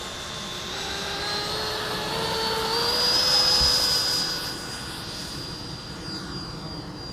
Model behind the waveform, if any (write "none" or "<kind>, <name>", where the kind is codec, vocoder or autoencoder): none